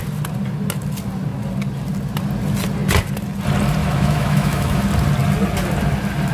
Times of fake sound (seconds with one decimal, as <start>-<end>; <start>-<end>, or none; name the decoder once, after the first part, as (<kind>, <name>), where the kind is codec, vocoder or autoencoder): 3.8-4.8 (autoencoder, DAC-VAE)